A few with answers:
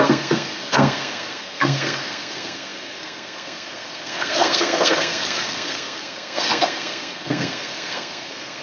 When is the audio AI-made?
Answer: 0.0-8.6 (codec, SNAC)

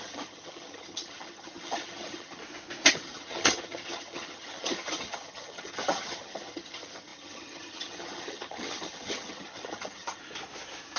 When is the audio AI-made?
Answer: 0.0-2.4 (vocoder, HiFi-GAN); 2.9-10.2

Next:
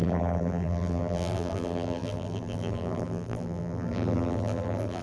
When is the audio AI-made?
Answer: 0.0-5.0 (vocoder, BigVGAN v2)

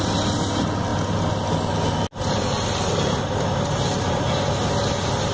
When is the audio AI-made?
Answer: none